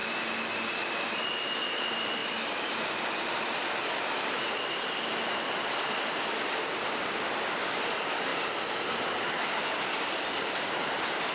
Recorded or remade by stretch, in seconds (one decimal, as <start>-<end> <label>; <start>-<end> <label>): 0.0-1.2 recorded; 1.2-8.3 remade; 8.3-9.7 recorded; 9.7-11.3 remade